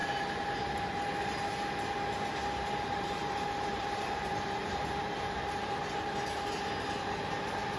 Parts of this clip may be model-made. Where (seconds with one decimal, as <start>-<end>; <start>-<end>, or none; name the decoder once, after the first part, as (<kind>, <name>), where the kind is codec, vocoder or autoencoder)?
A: 0.0-0.5 (vocoder, BigVGAN v2); 2.4-5.8